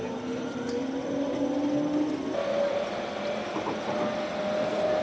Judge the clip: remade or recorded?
recorded